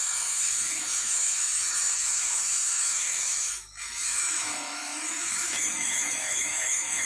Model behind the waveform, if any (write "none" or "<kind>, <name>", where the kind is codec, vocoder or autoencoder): autoencoder, DAC-VAE